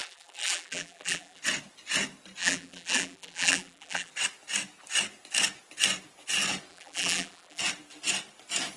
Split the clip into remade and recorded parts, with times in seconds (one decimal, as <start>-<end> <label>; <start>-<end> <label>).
0.0-1.4 remade; 1.4-2.4 recorded; 2.4-4.1 remade; 4.1-6.7 recorded; 6.7-7.6 remade; 7.6-8.8 recorded